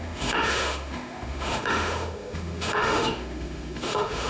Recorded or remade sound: remade